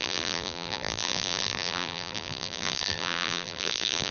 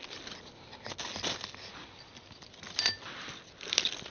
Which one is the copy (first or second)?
first